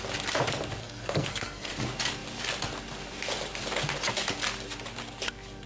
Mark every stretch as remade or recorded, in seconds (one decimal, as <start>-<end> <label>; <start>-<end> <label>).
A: 0.0-0.8 recorded; 0.8-1.7 remade; 1.7-5.7 recorded